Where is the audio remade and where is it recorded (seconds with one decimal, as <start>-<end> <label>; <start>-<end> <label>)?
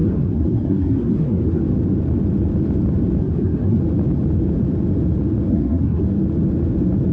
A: 0.0-1.6 remade; 1.6-3.2 recorded; 3.2-3.8 remade; 3.8-5.5 recorded; 5.5-6.0 remade; 6.0-7.1 recorded